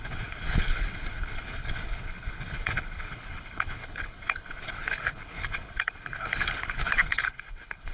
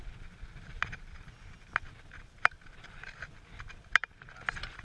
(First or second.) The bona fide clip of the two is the second